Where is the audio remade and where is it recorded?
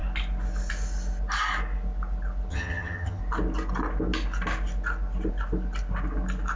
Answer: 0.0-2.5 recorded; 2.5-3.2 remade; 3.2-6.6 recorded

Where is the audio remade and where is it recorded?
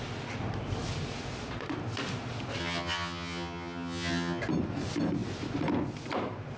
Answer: 0.0-2.6 recorded; 2.6-4.4 remade; 4.4-6.6 recorded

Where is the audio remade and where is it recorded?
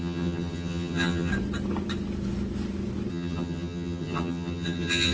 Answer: 0.0-1.3 remade; 1.3-3.1 recorded; 3.1-5.1 remade